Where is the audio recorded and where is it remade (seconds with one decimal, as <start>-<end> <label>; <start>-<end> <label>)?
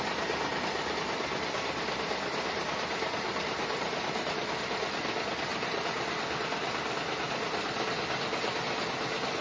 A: 0.0-2.3 recorded; 2.3-4.5 remade; 4.5-9.4 recorded